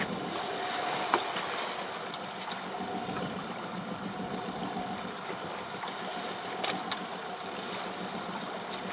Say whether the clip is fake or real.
real